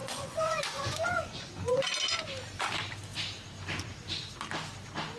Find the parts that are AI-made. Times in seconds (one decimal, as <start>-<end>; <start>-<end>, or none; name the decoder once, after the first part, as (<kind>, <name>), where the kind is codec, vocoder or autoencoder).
0.0-1.9 (vocoder, Vocos)